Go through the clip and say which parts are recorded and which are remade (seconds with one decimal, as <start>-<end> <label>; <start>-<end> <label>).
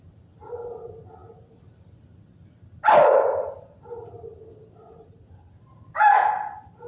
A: 0.0-6.9 recorded